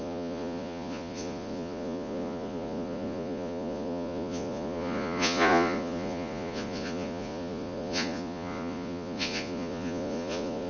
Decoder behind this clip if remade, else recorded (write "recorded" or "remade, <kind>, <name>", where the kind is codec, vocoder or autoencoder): remade, vocoder, Vocos